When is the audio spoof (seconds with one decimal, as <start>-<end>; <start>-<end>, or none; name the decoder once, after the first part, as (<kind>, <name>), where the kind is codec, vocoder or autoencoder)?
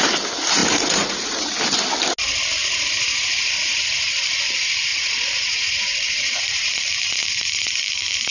0.6-1.5 (vocoder, Vocos); 4.9-6.7